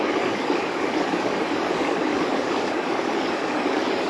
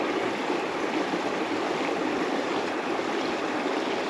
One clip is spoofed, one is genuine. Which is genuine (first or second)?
second